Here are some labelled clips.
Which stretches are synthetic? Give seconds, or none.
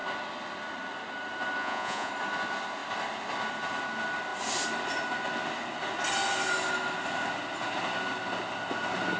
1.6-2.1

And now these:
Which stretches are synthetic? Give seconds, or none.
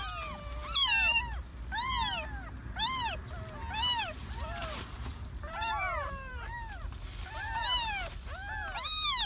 4.2-6.5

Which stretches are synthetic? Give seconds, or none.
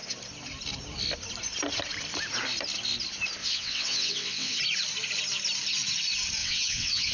3.4-4.6; 6.4-7.1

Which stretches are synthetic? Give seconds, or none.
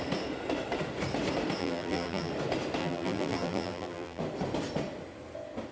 1.6-2.3; 2.8-4.2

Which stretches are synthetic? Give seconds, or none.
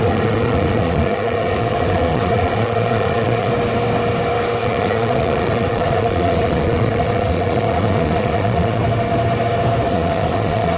0.0-3.5; 4.6-8.8; 9.9-10.8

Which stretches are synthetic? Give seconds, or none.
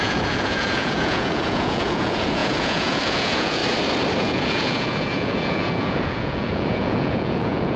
0.0-3.6; 4.2-7.8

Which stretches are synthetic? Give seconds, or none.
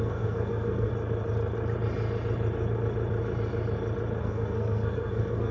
0.0-0.9; 4.2-5.5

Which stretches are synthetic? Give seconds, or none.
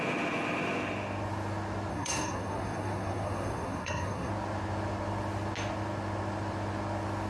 1.9-4.3